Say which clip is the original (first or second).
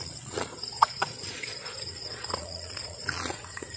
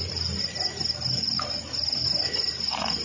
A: second